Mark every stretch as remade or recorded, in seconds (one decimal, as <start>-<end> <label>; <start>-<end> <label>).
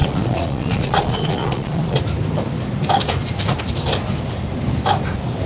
0.0-2.0 remade; 2.0-5.5 recorded